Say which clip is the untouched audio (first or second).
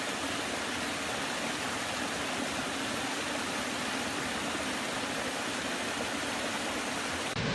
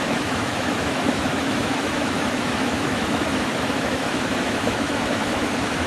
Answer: first